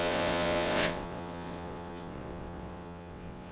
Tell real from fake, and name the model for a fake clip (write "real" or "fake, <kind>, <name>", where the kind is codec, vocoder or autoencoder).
fake, vocoder, WaveNeXt